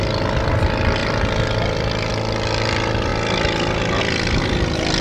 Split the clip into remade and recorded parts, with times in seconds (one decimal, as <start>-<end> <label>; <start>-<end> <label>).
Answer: 0.0-1.0 recorded; 1.0-2.1 remade; 2.1-5.0 recorded